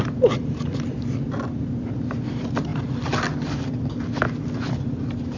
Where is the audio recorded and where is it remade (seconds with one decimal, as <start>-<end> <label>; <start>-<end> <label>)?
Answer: 0.0-5.4 recorded